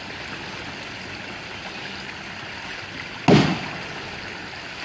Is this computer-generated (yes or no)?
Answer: no